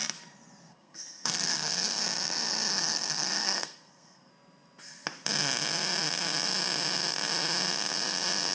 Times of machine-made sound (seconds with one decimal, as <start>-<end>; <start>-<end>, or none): 0.7-2.0; 2.7-4.3